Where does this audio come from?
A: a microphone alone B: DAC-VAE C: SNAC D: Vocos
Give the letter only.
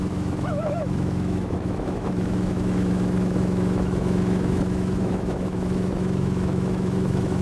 B